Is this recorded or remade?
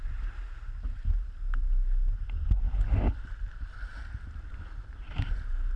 recorded